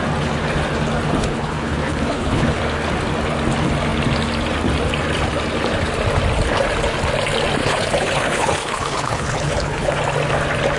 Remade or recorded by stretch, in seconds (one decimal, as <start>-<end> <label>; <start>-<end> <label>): 0.0-1.2 recorded; 1.2-2.6 remade; 2.6-7.6 recorded; 7.6-10.0 remade; 10.0-10.8 recorded